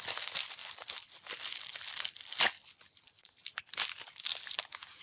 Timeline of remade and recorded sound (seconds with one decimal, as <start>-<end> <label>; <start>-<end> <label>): 0.0-0.6 recorded; 0.6-3.6 remade; 3.6-5.0 recorded

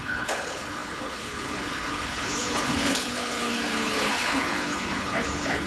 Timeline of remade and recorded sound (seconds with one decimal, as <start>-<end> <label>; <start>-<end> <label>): 0.0-5.7 remade

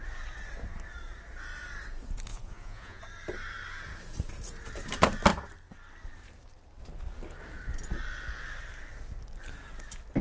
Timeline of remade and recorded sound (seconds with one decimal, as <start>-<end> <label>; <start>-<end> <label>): 0.0-2.3 recorded; 2.3-3.0 remade; 3.0-10.2 recorded

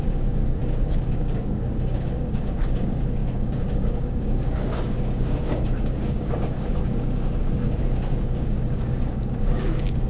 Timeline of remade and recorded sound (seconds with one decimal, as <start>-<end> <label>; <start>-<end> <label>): 0.0-10.1 remade